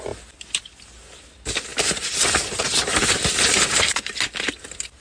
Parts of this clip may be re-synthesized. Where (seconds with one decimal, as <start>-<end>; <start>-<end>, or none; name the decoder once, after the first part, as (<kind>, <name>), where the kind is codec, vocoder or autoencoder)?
none